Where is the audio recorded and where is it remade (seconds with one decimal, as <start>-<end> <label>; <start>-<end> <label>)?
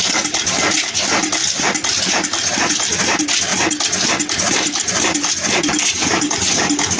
0.0-3.5 remade; 3.5-4.3 recorded; 4.3-7.0 remade